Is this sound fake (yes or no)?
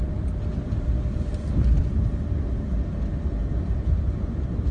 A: yes